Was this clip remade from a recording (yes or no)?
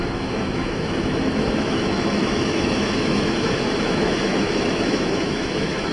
yes